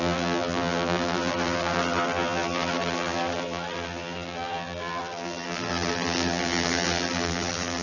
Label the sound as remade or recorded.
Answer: remade